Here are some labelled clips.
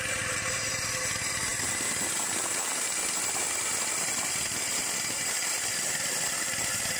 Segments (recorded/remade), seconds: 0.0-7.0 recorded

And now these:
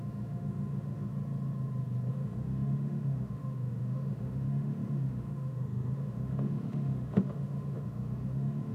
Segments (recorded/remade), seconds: 0.0-1.1 remade; 1.1-2.1 recorded; 2.1-8.7 remade